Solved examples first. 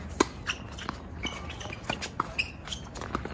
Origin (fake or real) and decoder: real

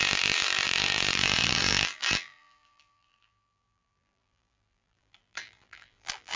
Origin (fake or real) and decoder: fake, vocoder, BigVGAN v2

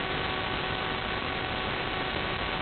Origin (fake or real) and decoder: real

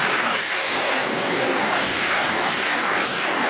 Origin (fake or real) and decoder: fake, codec, DAC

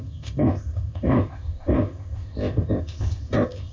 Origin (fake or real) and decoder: fake, codec, ZipCodec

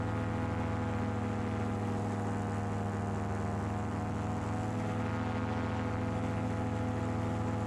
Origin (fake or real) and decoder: real